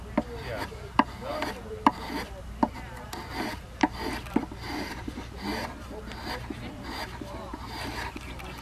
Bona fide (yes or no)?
yes